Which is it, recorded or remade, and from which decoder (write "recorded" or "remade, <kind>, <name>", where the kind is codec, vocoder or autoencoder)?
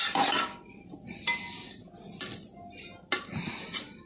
recorded